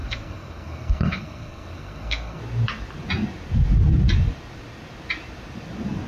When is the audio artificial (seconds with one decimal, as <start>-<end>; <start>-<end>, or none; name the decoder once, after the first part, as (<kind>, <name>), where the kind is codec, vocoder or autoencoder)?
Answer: 0.0-2.4 (codec, SNAC)